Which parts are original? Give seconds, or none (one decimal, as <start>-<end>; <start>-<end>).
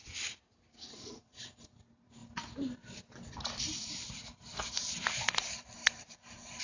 0.0-0.9; 2.2-3.6; 4.2-5.0